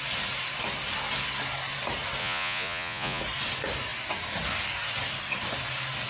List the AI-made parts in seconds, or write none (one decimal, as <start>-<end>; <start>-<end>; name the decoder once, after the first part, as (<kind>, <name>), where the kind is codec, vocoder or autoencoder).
2.2-3.2 (vocoder, Vocos)